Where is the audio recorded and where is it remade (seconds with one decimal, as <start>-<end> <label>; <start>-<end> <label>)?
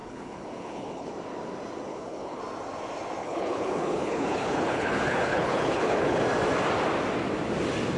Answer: 0.0-1.1 remade; 1.1-1.9 recorded; 1.9-2.4 remade; 2.4-3.2 recorded; 3.2-6.2 remade; 6.2-8.0 recorded